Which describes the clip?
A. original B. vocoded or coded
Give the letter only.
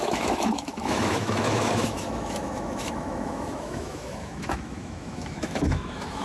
B